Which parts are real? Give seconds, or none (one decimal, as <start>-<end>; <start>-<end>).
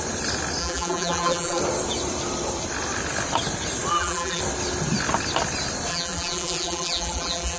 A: 0.0-0.6; 1.6-3.9; 4.4-5.9